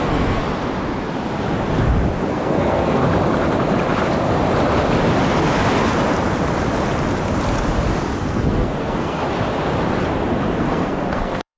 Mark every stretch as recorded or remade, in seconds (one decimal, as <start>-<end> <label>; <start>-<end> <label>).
0.0-0.4 remade; 0.4-2.3 recorded; 2.3-3.0 remade; 3.0-8.2 recorded; 8.2-9.2 remade; 9.2-10.6 recorded; 10.6-11.6 remade